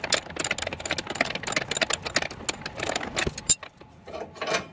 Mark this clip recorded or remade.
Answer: recorded